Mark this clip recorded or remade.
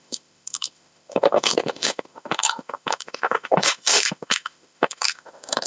remade